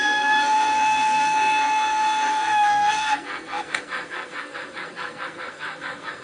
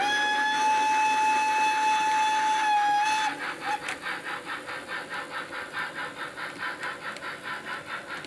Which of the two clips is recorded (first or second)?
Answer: second